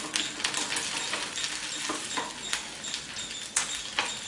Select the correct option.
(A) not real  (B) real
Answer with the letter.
B